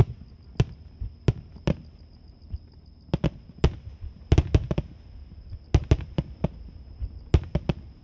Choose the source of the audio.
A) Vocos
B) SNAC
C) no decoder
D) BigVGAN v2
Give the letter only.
C